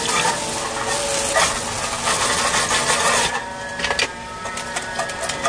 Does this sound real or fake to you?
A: real